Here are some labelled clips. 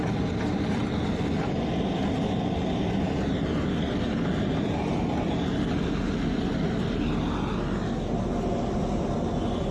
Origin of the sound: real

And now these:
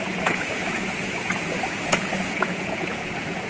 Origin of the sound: fake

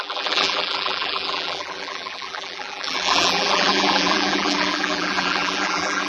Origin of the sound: fake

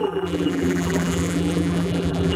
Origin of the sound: fake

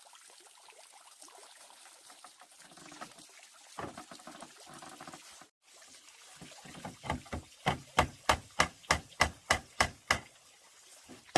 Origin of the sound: real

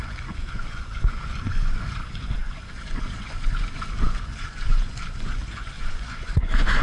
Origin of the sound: fake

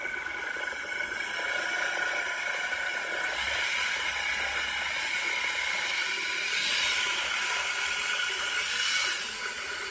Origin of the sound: fake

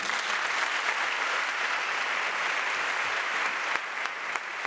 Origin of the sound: real